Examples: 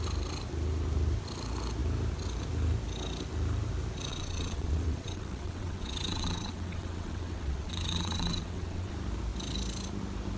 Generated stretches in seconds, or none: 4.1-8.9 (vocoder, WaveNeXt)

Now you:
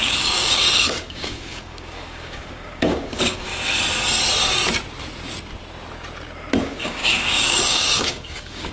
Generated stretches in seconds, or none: 0.0-3.5 (codec, DAC); 6.6-8.7